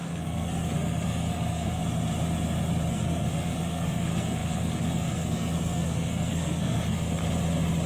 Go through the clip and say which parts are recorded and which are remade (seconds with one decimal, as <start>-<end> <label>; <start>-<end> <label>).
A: 0.0-1.8 remade; 1.8-2.9 recorded; 2.9-7.2 remade; 7.2-7.9 recorded